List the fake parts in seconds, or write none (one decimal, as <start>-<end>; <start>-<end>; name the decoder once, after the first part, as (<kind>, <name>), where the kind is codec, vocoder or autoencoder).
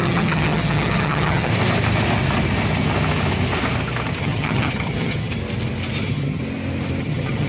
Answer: 0.0-1.5 (vocoder, HiFi-GAN); 4.2-5.4; 6.0-6.4; 7.0-7.5